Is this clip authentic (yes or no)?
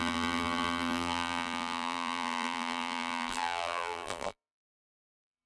no